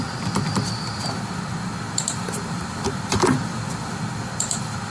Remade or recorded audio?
recorded